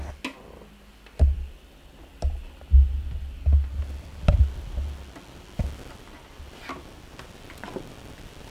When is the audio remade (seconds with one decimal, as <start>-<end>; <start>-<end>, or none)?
none